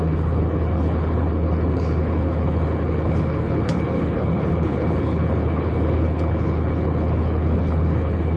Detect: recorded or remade remade